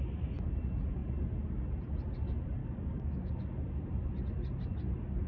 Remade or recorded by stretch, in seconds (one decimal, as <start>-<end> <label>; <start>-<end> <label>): 0.0-2.6 recorded; 2.6-3.3 remade; 3.3-5.3 recorded